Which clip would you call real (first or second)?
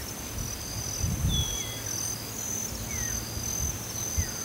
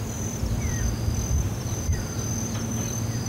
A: first